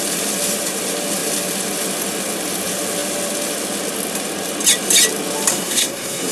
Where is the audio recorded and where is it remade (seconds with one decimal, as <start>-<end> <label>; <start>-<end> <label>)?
0.0-5.5 recorded; 5.5-6.3 remade